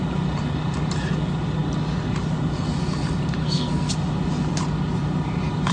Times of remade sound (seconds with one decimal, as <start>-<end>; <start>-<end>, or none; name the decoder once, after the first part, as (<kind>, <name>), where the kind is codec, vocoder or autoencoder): 3.4-3.9 (codec, SNAC)